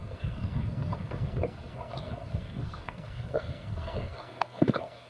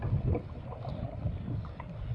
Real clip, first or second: second